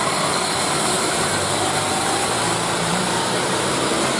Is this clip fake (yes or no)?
yes